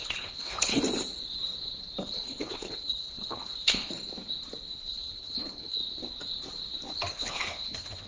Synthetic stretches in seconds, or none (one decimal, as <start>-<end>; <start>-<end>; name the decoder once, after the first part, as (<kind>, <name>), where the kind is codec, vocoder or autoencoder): 0.0-0.8 (codec, HILCodec); 2.0-4.0; 4.8-5.8; 7.1-8.1